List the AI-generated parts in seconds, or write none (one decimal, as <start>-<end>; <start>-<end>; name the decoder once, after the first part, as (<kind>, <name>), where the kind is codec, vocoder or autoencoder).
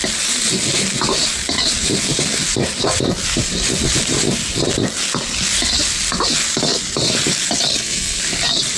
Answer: 7.7-8.2 (codec, SNAC)